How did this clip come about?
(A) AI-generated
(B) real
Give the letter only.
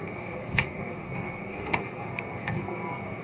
A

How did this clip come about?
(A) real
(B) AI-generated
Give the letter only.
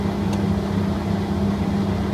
A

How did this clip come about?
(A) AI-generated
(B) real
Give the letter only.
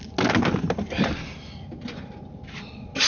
B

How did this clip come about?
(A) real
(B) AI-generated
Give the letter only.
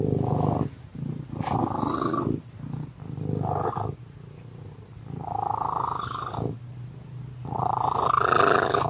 A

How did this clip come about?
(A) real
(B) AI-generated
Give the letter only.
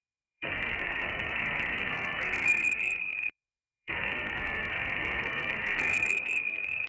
B